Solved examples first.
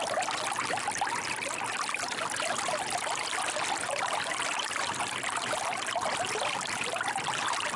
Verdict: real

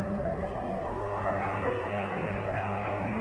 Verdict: fake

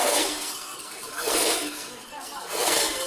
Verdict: fake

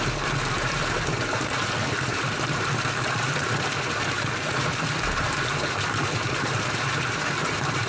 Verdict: fake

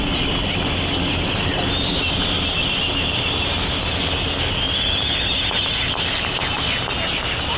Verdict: real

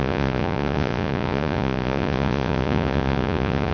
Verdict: fake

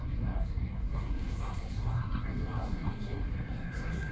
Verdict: fake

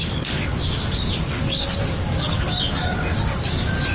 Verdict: fake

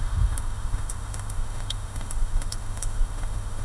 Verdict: fake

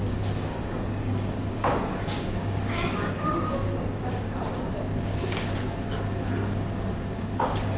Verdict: fake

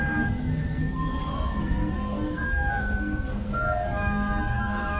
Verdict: fake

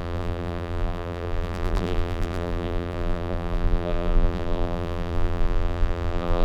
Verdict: fake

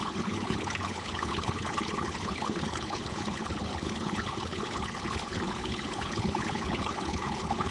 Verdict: fake